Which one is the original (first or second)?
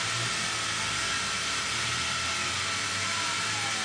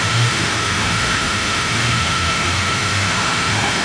first